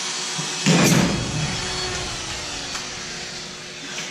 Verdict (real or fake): real